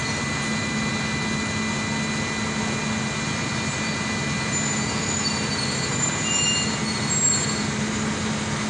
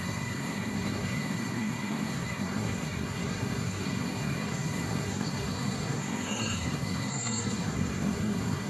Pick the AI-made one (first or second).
second